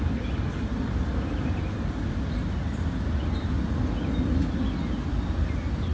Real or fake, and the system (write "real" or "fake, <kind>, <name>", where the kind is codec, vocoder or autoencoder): real